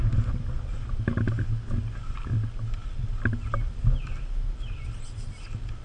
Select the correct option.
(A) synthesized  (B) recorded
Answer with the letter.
B